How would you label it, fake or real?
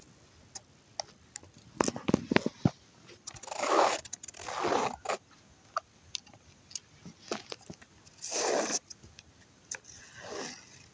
real